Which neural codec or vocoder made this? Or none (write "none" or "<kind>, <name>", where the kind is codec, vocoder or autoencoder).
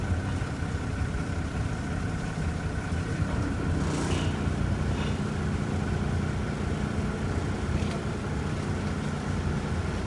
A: none